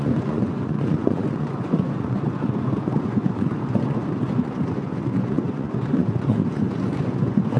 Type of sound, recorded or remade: remade